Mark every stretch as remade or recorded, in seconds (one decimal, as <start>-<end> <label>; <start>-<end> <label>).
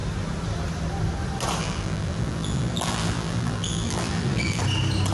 0.0-1.6 recorded; 1.6-4.6 remade; 4.6-5.1 recorded